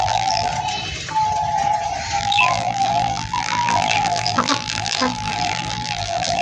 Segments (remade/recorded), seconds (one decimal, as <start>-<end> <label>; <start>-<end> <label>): 0.0-0.5 remade; 0.5-2.2 recorded; 2.2-6.4 remade